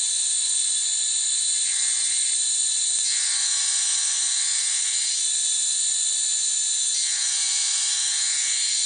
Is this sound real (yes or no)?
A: no